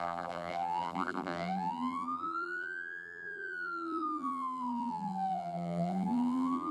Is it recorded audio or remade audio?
remade